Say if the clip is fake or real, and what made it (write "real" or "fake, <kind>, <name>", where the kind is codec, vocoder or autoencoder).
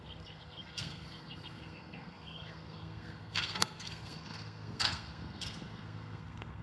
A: fake, codec, SNAC